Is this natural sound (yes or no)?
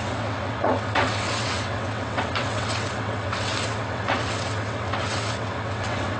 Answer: no